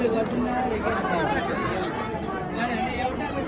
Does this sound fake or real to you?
real